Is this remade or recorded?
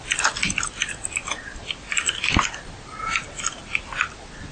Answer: recorded